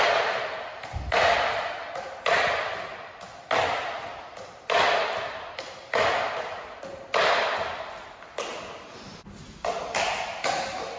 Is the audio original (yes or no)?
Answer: yes